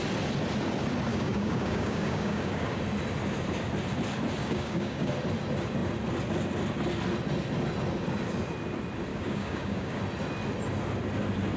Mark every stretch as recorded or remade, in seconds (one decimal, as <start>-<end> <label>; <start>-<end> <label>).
0.0-1.1 recorded; 1.1-2.8 remade; 2.8-4.4 recorded; 4.4-5.1 remade; 5.1-9.1 recorded; 9.1-10.0 remade; 10.0-11.6 recorded